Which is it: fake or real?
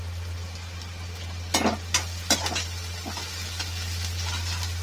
real